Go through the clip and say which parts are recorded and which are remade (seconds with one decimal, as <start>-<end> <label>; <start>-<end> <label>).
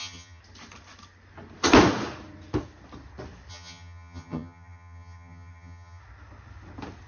0.0-0.4 remade; 0.4-3.5 recorded; 3.5-6.0 remade; 6.0-7.1 recorded